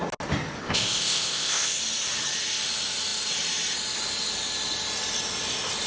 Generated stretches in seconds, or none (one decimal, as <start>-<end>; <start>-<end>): 0.6-1.8